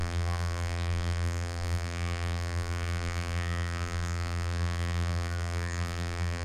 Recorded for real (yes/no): no